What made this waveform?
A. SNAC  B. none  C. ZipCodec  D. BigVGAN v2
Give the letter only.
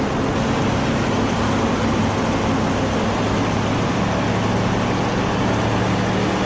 B